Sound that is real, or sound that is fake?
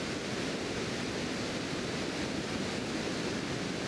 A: real